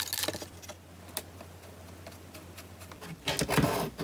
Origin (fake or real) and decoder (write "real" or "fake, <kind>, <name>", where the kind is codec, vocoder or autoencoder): real